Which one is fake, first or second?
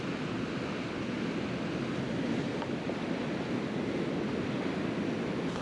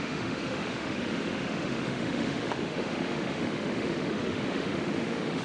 second